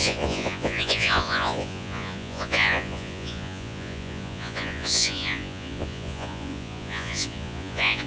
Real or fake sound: fake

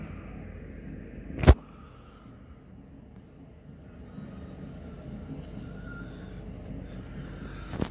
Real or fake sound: real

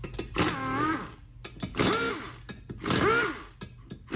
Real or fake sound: real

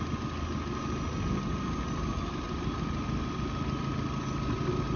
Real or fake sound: real